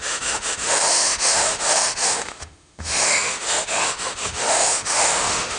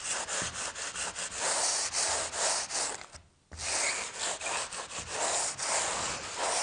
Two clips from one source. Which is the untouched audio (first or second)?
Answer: second